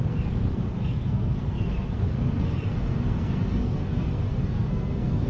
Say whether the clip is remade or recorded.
remade